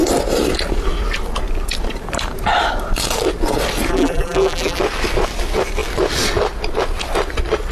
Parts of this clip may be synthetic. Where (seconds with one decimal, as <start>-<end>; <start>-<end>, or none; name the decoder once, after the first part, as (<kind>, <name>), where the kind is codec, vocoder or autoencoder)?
3.9-4.8 (vocoder, BigVGAN v2)

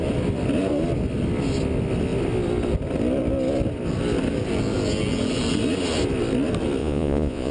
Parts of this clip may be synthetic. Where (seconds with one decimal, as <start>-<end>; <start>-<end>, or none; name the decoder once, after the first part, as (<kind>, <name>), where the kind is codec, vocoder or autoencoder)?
6.8-7.5 (vocoder, Vocos)

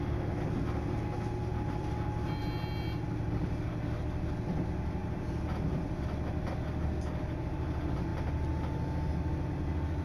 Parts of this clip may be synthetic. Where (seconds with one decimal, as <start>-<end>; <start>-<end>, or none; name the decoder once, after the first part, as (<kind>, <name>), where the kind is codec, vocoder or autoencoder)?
1.5-2.4 (vocoder, BigVGAN v2); 5.0-6.0

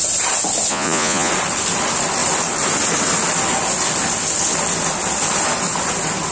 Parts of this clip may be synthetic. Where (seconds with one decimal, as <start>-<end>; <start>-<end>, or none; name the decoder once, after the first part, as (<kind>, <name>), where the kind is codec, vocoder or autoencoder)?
0.7-1.3 (vocoder, Vocos)

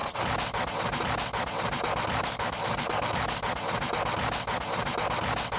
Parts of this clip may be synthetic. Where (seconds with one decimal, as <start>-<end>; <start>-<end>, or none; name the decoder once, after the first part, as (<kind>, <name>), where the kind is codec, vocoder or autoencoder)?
2.2-3.4 (codec, DAC)

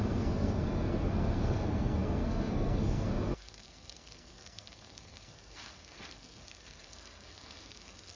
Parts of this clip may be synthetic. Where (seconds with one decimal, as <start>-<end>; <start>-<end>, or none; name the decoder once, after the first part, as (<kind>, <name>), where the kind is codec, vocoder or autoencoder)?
0.0-8.2 (codec, SNAC)

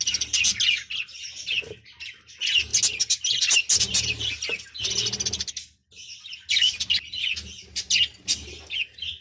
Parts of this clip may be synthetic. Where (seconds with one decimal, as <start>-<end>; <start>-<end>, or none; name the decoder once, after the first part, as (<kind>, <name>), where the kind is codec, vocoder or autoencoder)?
none

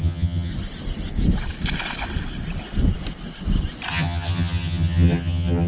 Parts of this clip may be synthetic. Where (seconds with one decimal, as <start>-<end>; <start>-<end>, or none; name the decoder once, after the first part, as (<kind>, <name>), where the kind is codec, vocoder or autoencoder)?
0.0-0.5 (vocoder, HiFi-GAN); 3.9-5.7